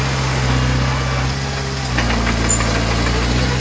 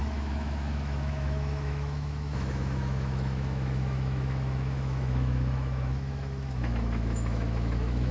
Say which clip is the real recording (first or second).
first